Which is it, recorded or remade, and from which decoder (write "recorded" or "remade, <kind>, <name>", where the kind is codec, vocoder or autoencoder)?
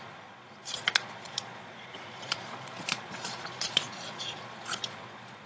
remade, vocoder, Vocos